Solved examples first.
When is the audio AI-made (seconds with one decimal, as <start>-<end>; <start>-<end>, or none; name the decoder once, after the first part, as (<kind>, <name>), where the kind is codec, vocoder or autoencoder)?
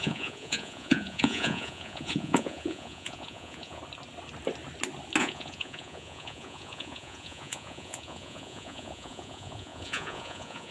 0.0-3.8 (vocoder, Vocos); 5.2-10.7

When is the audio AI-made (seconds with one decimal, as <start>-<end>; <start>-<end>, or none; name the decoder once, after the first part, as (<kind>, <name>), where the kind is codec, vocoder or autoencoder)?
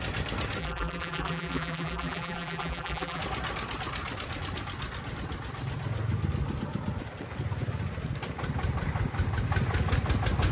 0.6-3.2 (vocoder, BigVGAN v2)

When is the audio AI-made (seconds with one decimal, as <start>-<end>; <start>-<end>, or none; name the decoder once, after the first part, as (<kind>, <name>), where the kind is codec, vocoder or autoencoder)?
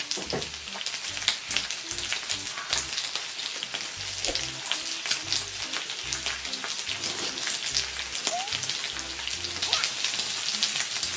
none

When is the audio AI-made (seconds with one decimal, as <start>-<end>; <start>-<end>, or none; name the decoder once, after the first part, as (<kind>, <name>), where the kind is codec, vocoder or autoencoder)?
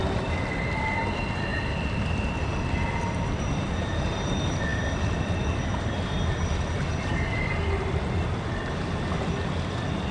none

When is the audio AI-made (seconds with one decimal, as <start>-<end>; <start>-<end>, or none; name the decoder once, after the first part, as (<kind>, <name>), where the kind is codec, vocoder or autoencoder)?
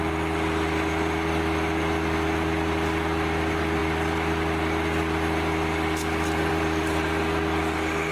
none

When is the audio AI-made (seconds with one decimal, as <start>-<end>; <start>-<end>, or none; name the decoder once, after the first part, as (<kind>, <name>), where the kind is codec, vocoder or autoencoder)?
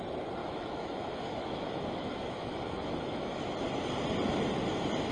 0.4-3.5 (autoencoder, DAC-VAE)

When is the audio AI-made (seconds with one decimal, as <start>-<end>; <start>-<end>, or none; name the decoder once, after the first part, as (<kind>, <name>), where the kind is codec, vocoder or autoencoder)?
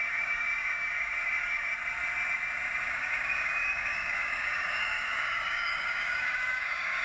0.0-1.7 (codec, DAC); 2.9-7.0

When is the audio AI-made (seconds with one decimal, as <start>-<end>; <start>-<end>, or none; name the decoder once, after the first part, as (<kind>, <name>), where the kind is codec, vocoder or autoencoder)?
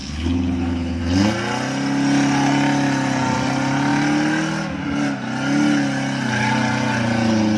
0.0-1.0 (codec, HILCodec)